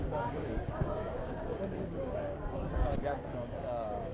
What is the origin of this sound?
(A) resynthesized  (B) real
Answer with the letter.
A